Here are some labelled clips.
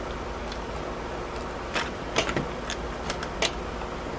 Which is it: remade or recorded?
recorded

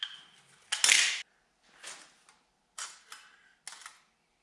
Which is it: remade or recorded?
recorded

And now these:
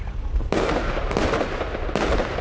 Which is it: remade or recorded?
recorded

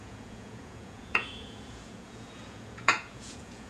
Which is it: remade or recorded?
remade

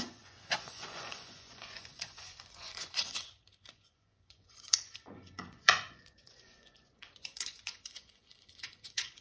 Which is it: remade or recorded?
remade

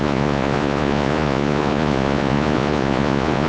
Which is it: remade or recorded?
remade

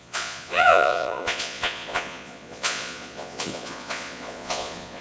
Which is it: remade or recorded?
remade